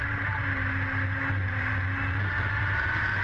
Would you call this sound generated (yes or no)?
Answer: no